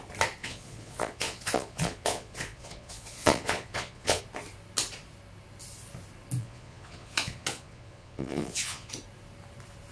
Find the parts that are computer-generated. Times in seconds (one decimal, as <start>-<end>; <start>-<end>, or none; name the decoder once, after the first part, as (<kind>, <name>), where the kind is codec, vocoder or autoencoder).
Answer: 0.4-4.2 (vocoder, Vocos); 6.4-8.9